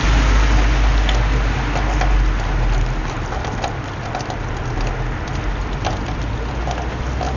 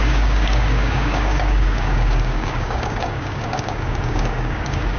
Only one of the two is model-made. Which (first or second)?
second